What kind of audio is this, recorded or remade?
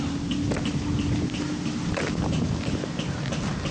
recorded